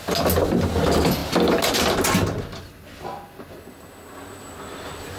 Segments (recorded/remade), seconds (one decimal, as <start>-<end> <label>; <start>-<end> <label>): 0.0-5.2 recorded